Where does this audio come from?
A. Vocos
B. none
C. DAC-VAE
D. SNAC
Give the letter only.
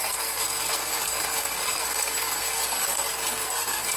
D